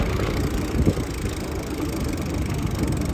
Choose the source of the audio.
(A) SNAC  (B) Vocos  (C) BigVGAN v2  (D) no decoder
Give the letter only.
D